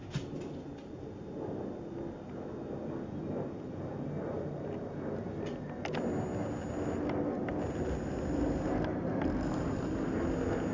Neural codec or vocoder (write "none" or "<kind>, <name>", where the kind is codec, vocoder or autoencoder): none